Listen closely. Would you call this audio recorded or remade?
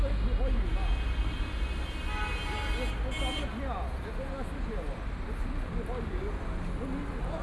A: recorded